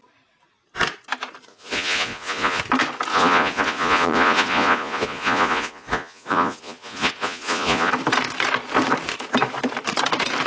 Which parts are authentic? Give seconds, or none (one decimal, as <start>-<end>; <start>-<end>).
0.0-1.5; 2.6-3.1; 7.9-10.5